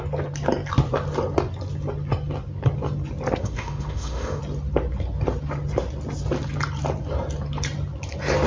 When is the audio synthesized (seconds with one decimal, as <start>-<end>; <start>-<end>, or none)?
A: 3.4-4.4